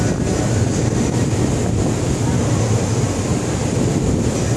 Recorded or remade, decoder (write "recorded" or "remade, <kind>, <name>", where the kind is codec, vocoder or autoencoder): recorded